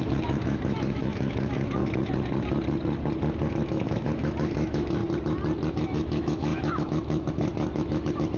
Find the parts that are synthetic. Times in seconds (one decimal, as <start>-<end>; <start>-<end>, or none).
0.0-1.8; 3.5-5.0; 5.7-8.4